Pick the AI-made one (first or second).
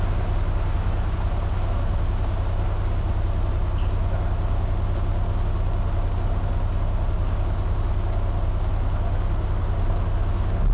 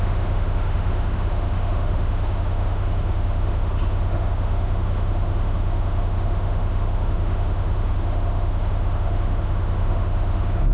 second